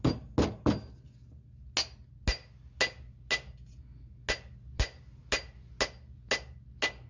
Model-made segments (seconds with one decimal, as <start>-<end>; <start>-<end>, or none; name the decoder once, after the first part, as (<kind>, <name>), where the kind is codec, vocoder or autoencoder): none